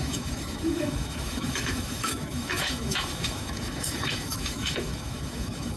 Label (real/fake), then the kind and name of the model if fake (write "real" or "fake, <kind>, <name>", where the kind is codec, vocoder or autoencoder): fake, autoencoder, DAC-VAE